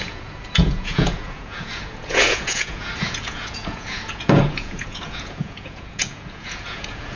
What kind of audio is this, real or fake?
fake